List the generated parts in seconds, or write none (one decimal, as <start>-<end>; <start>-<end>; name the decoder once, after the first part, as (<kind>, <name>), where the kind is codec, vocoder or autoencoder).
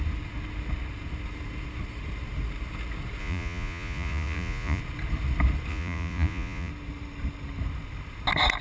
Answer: 3.2-4.8 (vocoder, Vocos); 5.7-6.7